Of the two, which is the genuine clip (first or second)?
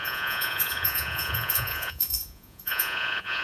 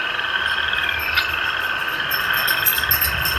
second